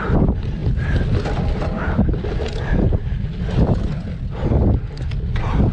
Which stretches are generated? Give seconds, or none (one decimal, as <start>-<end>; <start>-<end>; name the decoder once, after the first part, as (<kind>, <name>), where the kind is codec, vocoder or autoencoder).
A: none